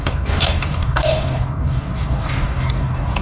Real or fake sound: fake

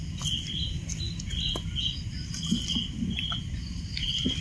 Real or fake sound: real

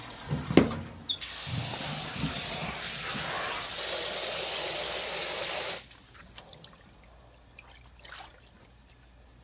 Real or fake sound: real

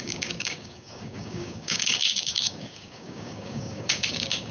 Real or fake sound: fake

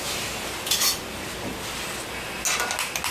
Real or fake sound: real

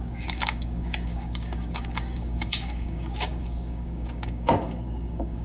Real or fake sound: fake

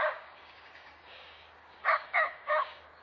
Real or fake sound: fake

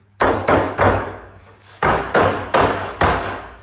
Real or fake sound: fake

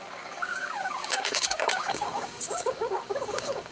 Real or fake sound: fake